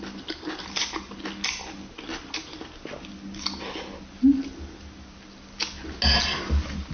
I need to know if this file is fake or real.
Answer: real